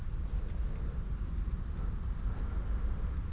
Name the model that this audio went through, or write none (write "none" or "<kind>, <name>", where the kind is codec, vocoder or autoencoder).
none